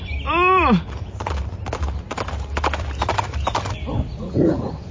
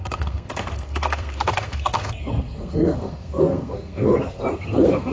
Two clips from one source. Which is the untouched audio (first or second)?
first